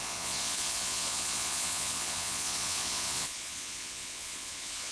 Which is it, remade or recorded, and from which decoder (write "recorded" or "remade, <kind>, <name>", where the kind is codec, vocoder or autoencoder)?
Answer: remade, vocoder, Vocos